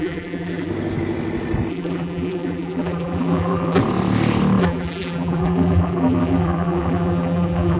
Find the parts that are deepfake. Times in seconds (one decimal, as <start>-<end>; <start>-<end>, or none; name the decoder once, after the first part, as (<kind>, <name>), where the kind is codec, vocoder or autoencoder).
0.0-0.7 (vocoder, BigVGAN v2); 1.7-3.8; 4.6-7.8